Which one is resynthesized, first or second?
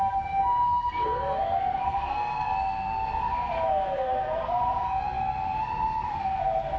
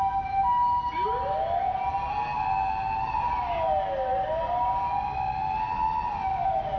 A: first